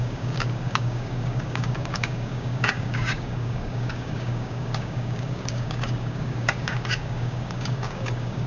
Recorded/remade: remade